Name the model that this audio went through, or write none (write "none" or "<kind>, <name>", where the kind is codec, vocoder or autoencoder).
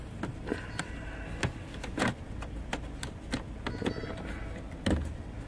none